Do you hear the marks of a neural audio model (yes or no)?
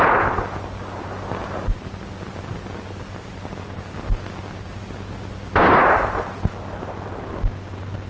no